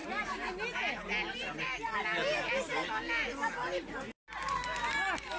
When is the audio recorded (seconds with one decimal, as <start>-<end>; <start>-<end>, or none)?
0.0-5.4